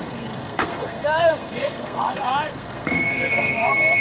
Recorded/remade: remade